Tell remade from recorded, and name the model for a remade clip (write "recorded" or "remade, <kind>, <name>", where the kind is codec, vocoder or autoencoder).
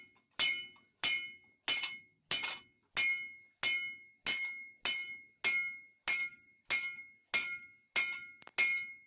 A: recorded